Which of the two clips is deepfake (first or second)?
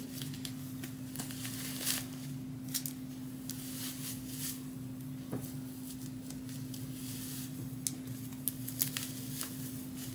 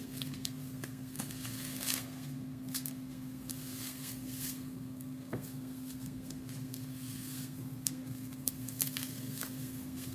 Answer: second